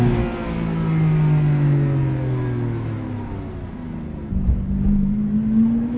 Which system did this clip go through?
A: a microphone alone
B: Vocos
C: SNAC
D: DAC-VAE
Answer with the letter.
A